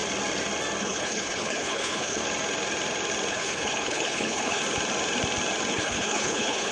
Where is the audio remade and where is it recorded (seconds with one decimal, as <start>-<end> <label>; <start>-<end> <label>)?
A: 0.0-0.8 recorded; 0.8-2.2 remade; 2.2-3.3 recorded; 3.3-4.6 remade; 4.6-5.7 recorded; 5.7-6.7 remade